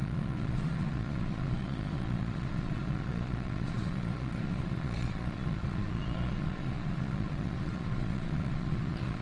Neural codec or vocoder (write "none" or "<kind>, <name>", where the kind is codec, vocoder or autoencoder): vocoder, Vocos